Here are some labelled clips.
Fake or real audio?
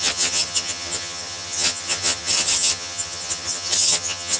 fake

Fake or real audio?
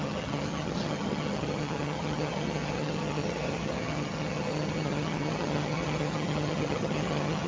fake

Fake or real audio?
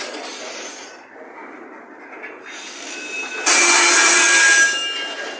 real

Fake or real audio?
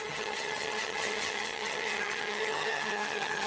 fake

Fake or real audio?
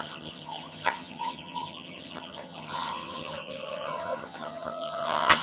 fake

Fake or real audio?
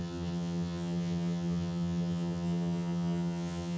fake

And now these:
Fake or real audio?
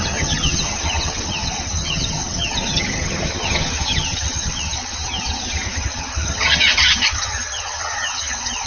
fake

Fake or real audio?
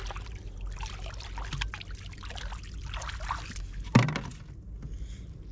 real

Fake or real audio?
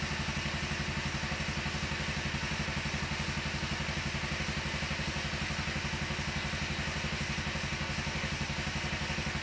real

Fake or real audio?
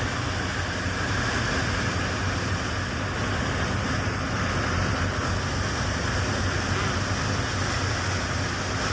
real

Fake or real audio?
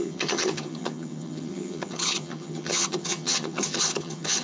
fake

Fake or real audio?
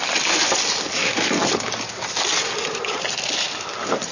real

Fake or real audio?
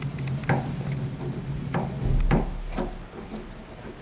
real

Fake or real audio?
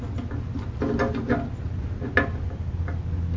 real